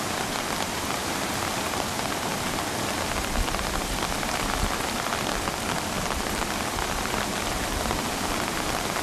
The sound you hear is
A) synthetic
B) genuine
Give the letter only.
B